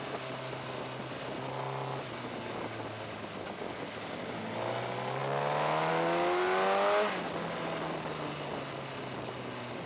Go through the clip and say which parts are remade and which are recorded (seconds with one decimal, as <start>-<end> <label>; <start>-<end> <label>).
0.0-9.9 recorded